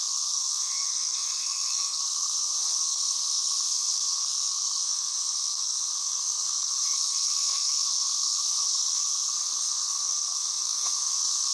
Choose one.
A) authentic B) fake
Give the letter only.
B